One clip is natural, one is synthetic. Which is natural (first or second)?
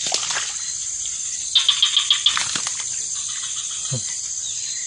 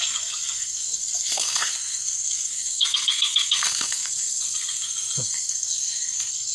first